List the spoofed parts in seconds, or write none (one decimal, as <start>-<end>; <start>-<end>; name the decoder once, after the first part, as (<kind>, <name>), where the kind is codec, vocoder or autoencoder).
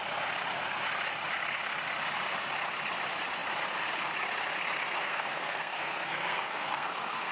5.0-7.3 (codec, SNAC)